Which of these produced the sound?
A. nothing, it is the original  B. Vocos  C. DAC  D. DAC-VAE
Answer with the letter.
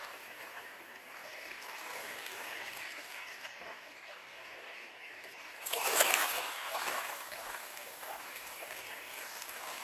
C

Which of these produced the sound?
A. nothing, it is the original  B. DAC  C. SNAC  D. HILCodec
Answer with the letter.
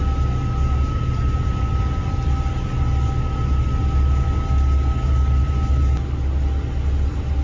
A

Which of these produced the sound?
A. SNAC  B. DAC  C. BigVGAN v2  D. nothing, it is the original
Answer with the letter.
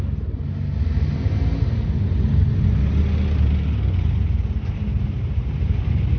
D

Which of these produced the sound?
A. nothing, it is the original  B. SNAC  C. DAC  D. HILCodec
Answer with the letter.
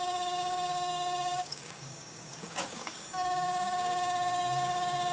C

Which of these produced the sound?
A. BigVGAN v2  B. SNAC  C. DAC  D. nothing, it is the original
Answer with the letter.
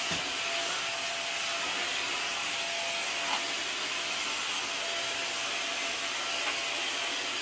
D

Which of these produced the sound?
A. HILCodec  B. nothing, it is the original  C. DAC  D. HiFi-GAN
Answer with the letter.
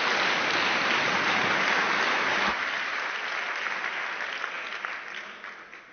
B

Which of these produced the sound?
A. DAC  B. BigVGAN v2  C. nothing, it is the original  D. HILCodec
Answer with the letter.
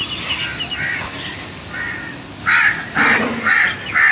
C